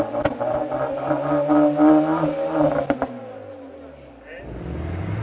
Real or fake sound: real